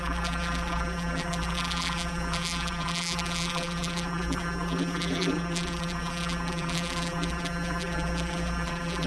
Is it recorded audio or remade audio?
remade